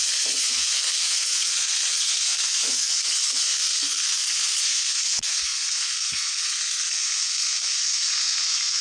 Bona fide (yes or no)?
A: no